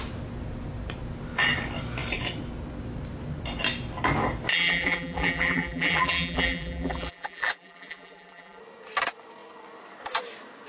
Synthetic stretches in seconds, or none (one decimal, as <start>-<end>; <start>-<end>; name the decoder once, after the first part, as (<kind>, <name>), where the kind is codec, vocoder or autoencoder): 4.5-8.6 (vocoder, BigVGAN v2)